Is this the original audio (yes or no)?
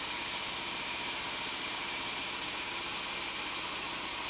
yes